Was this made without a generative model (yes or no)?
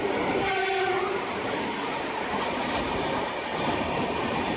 no